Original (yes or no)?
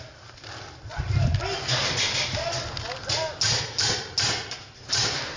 yes